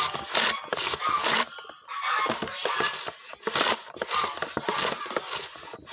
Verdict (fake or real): real